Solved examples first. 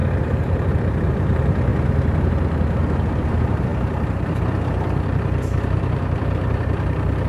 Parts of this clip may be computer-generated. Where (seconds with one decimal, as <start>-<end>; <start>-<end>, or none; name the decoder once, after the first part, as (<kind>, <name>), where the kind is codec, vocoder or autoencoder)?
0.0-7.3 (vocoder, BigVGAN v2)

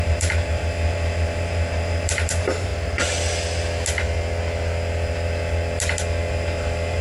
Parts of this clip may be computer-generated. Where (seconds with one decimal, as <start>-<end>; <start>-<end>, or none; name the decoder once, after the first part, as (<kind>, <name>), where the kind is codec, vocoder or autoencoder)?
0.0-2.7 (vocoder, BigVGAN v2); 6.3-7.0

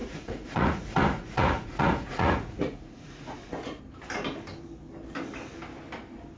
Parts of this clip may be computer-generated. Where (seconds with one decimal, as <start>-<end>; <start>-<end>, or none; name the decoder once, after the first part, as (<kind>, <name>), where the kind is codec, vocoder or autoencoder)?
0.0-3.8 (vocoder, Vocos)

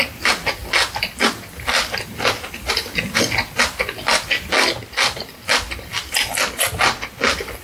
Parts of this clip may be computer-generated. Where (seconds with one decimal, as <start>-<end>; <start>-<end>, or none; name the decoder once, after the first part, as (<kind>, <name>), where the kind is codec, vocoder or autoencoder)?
none

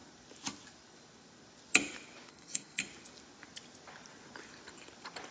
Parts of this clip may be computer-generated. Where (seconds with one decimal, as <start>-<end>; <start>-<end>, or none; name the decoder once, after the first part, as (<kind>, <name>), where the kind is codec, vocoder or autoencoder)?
2.3-2.8 (codec, SNAC)

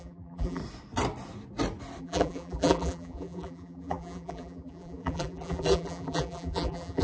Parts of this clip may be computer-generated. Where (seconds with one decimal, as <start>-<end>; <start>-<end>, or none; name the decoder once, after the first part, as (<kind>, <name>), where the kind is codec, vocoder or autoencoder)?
0.0-0.6 (vocoder, BigVGAN v2); 2.0-7.0